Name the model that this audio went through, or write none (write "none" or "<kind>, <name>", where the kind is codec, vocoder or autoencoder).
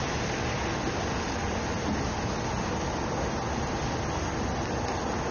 none